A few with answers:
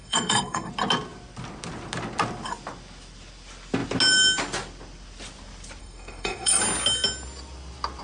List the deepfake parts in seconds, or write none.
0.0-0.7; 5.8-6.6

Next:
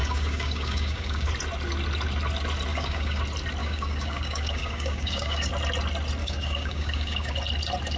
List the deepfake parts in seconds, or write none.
0.0-1.3; 2.7-3.2; 3.6-5.5; 6.2-7.4